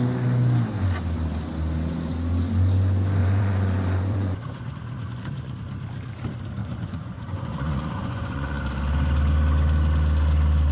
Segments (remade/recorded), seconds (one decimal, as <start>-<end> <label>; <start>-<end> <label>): 0.0-3.2 recorded; 3.2-5.6 remade; 5.6-6.6 recorded; 6.6-8.6 remade; 8.6-10.7 recorded